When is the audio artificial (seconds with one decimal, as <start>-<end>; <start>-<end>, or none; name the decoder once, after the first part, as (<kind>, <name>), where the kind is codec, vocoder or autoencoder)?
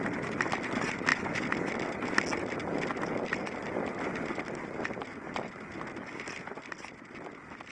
none